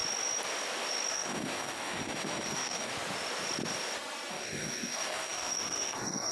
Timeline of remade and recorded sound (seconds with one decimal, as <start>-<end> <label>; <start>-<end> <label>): 0.0-1.1 recorded; 1.1-2.9 remade; 2.9-4.3 recorded; 4.3-6.3 remade